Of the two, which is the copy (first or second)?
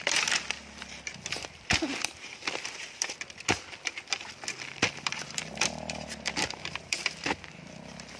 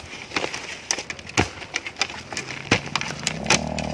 first